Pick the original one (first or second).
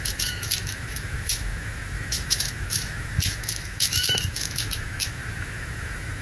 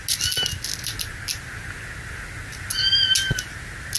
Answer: second